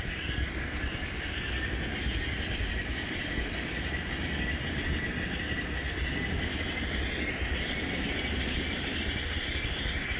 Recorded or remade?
recorded